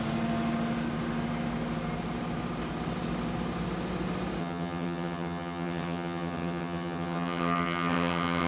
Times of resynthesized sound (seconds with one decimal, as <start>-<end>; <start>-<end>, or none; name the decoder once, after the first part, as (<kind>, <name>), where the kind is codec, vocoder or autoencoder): 4.4-8.5 (vocoder, HiFi-GAN)